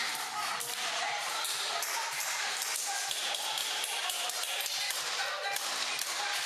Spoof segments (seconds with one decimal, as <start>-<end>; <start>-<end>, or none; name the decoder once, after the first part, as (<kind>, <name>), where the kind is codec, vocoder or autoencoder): 0.5-2.6 (vocoder, BigVGAN v2)